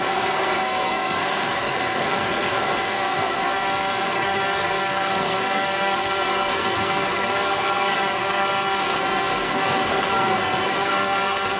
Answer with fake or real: fake